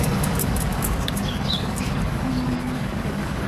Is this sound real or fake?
fake